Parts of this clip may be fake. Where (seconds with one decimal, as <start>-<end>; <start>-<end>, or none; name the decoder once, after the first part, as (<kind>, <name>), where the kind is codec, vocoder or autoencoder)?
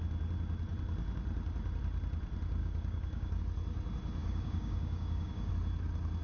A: 2.6-3.4 (codec, DAC); 4.2-5.5